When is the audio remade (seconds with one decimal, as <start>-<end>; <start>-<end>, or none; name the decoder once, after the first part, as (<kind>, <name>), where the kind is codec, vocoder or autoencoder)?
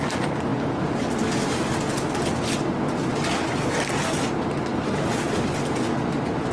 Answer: none